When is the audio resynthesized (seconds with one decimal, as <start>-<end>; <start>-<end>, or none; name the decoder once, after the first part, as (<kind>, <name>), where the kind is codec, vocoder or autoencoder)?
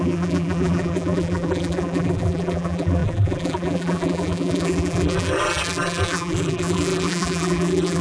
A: 0.0-8.0 (vocoder, BigVGAN v2)